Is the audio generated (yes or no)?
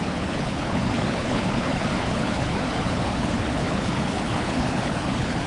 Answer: yes